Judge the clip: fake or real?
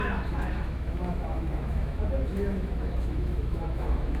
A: fake